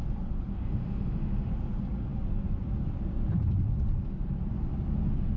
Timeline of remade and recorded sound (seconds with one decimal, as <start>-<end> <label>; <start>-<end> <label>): 0.0-0.5 recorded; 0.5-1.5 remade; 1.5-5.4 recorded